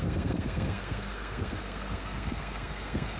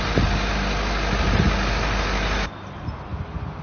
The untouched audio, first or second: second